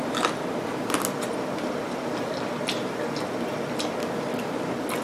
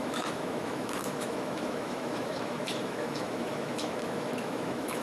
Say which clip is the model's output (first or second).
second